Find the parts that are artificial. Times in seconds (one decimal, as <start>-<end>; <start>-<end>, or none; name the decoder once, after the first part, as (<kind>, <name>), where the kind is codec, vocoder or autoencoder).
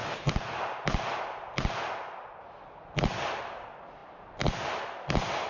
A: none